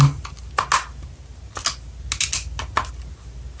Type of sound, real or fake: real